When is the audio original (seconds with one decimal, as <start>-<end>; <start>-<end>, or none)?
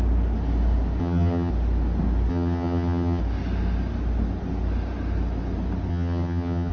0.0-1.0; 1.5-2.3; 3.2-5.9